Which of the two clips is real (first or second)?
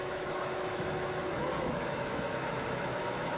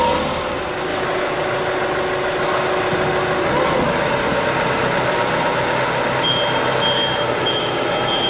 second